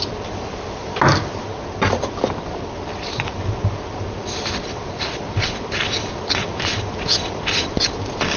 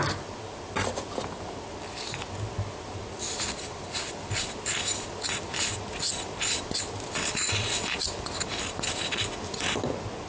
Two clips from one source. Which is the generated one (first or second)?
first